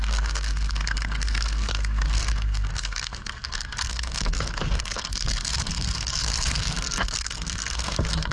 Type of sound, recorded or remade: remade